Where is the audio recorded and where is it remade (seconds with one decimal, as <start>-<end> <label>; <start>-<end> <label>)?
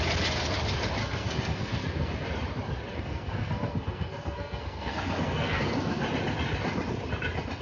0.0-1.0 recorded; 1.0-2.3 remade; 2.3-2.9 recorded; 2.9-6.0 remade; 6.0-7.6 recorded